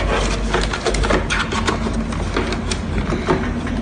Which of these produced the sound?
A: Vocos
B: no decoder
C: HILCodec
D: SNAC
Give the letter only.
B